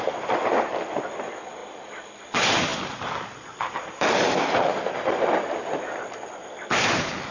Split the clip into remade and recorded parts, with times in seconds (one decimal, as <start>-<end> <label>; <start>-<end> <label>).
0.0-7.3 recorded

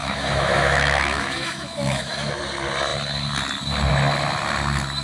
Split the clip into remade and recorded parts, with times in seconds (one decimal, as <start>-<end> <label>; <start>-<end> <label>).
0.0-2.4 remade; 2.4-5.0 recorded